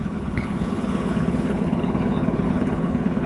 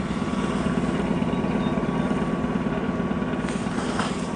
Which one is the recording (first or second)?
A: second